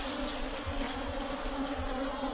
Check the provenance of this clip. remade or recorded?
recorded